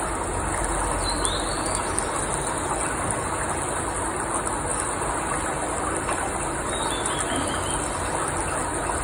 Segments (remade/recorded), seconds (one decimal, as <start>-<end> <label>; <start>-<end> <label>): 0.0-9.0 recorded